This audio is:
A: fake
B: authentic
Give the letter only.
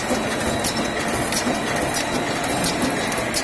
B